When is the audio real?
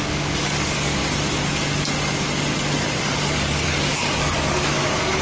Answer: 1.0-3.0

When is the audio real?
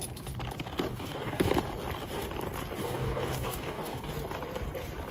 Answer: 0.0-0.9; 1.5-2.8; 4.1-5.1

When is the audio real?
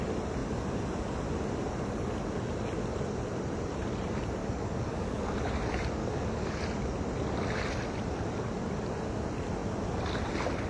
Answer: 0.0-4.4; 5.5-6.0; 6.6-10.7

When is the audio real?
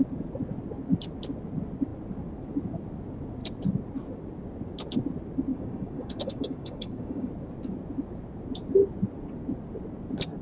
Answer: 0.0-5.5; 7.3-10.4